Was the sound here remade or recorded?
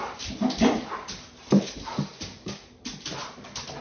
recorded